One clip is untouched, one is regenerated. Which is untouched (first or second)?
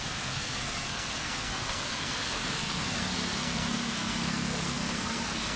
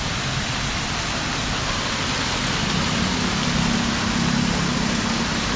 second